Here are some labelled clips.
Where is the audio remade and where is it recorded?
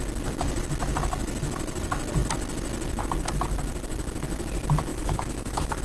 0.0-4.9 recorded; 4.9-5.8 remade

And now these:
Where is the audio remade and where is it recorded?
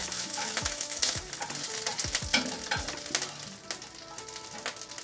0.0-1.2 remade; 1.2-5.0 recorded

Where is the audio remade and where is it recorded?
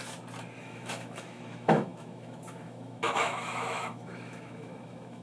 0.0-0.6 recorded; 0.6-5.2 remade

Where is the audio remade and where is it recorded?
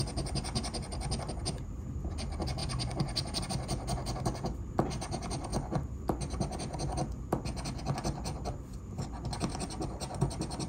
0.0-10.7 recorded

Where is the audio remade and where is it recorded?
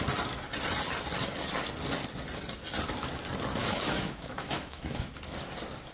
0.0-3.6 recorded; 3.6-5.1 remade; 5.1-5.9 recorded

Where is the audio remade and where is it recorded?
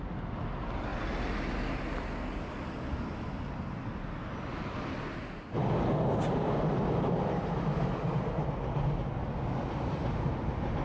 0.0-10.8 recorded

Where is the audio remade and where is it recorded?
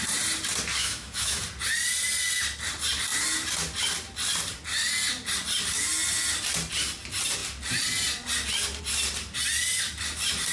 0.0-0.8 recorded; 0.8-1.4 remade; 1.4-10.5 recorded